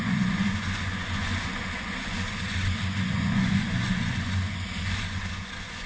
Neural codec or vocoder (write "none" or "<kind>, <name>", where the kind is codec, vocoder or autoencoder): vocoder, Vocos